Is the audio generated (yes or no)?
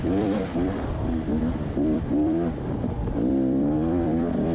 yes